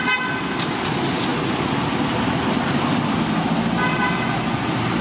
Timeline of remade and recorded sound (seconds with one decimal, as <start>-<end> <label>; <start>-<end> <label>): 0.0-5.0 recorded